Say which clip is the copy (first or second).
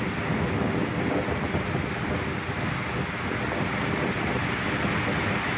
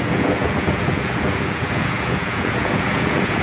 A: second